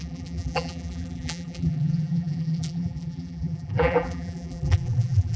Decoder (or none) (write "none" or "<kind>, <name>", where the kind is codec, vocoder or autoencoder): vocoder, BigVGAN v2